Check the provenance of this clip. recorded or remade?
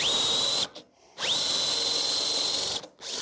recorded